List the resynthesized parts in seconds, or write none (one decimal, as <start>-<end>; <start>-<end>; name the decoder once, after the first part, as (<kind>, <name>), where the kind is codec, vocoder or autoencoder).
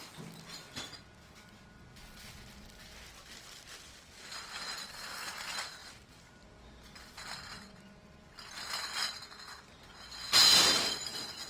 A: none